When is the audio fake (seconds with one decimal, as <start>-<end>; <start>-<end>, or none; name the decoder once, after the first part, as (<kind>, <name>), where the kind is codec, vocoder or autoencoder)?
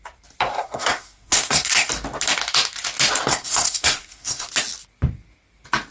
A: 0.5-1.9 (codec, SNAC); 3.3-4.5